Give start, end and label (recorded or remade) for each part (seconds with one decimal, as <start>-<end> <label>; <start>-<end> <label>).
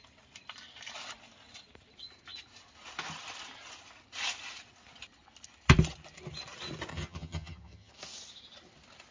0.0-6.9 recorded; 6.9-7.9 remade; 7.9-9.1 recorded